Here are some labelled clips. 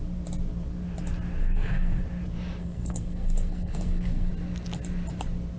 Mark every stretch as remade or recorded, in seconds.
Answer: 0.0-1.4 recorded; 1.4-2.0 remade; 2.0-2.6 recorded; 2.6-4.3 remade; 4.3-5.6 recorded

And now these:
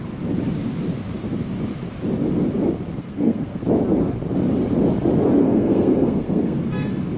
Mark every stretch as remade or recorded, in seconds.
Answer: 0.0-3.0 recorded; 3.0-3.6 remade; 3.6-5.4 recorded; 5.4-6.6 remade; 6.6-7.2 recorded

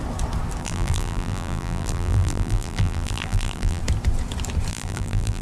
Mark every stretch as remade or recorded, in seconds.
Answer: 0.0-0.6 recorded; 0.6-3.8 remade; 3.8-4.7 recorded; 4.7-5.4 remade